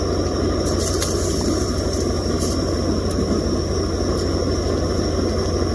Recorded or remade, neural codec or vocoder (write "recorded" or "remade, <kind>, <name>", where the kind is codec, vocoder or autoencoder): recorded